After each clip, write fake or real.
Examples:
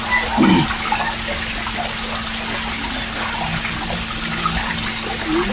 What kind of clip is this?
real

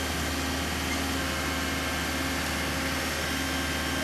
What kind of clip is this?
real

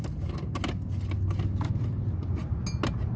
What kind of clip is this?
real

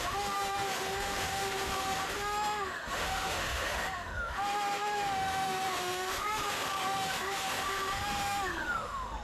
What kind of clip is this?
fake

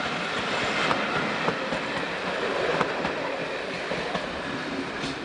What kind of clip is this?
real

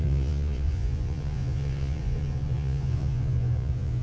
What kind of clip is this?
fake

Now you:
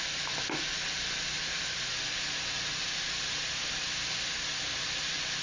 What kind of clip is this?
real